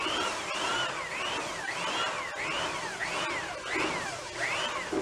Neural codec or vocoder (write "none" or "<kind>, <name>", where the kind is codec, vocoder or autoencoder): none